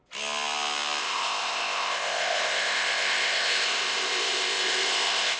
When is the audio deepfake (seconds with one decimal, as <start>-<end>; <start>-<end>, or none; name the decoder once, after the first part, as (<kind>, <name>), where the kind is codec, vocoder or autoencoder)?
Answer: 1.0-5.4 (codec, ZipCodec)